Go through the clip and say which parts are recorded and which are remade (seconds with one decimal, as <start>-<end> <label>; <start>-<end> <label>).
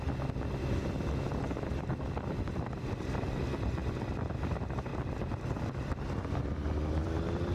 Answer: 0.0-4.9 remade; 4.9-6.3 recorded; 6.3-7.5 remade